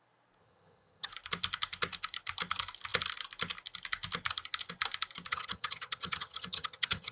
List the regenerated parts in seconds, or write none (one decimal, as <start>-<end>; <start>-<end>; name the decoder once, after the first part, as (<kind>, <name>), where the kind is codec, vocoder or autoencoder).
0.4-1.1 (vocoder, HiFi-GAN); 5.3-7.1